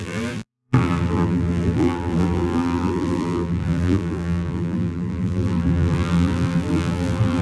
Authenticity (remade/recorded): remade